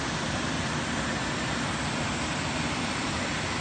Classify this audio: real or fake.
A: real